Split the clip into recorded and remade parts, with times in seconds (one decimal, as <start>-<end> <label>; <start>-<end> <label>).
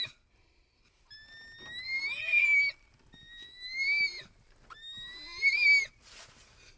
0.0-3.2 recorded; 3.2-4.0 remade; 4.0-6.8 recorded